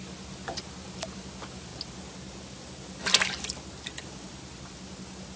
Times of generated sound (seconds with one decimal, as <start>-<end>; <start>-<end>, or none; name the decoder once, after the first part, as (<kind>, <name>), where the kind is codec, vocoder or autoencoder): none